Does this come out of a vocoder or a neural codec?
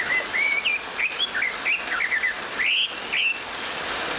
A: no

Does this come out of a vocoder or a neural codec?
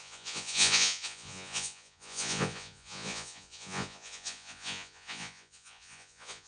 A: yes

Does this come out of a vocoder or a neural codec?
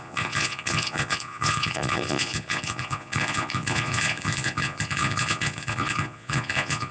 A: yes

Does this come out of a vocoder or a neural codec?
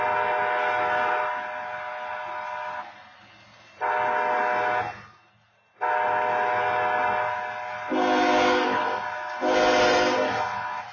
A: no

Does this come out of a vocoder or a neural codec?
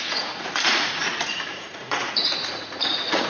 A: yes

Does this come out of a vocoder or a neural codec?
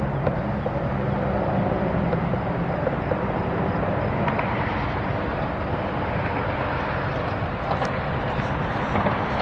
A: no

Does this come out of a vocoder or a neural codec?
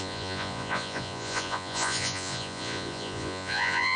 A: yes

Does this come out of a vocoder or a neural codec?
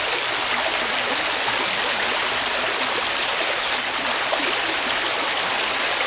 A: no